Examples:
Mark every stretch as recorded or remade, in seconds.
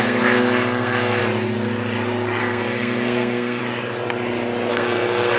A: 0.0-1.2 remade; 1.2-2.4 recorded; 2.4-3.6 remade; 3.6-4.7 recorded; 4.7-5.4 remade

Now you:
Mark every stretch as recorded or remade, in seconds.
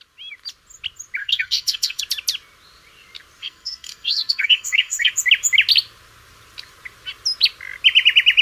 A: 0.0-1.2 recorded; 1.2-2.0 remade; 2.0-3.4 recorded; 3.4-5.1 remade; 5.1-8.4 recorded